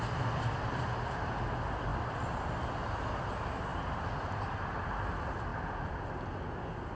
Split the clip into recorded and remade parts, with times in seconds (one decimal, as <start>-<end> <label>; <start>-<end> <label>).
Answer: 0.0-6.9 recorded